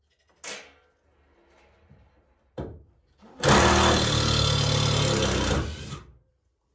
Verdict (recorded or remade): recorded